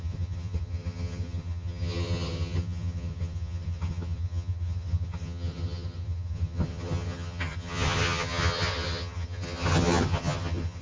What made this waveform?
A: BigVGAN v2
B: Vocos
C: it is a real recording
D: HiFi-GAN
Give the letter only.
D